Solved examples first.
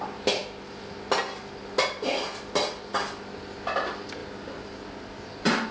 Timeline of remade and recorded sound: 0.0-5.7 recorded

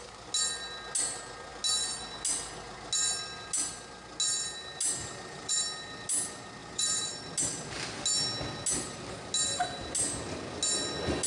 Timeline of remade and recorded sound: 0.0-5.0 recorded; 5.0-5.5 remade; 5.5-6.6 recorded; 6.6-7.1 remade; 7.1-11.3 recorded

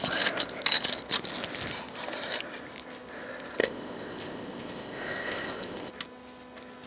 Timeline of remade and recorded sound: 0.0-3.6 recorded; 3.6-5.9 remade; 5.9-6.9 recorded

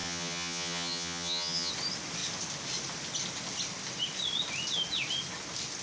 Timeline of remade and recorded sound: 0.0-1.7 remade; 1.7-5.8 recorded